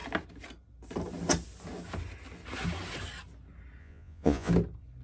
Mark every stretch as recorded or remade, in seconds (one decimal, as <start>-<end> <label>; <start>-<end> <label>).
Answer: 0.0-3.8 recorded; 3.8-4.5 remade; 4.5-5.0 recorded